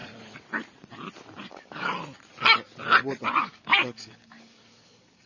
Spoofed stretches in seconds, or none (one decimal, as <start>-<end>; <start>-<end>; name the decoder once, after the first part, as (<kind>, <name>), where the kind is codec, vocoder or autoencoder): 1.5-1.9 (codec, DAC); 3.4-5.3